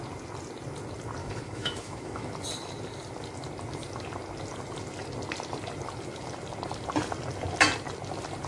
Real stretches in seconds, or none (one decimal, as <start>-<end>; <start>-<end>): 0.0-1.2; 2.3-8.5